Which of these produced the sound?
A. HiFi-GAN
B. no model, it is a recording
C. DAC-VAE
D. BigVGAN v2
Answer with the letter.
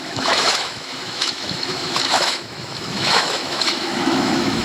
C